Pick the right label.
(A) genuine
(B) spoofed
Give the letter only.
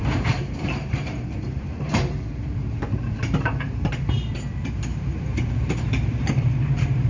B